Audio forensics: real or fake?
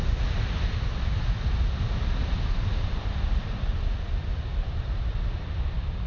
real